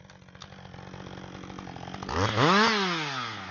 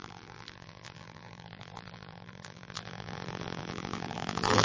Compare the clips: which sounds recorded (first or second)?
first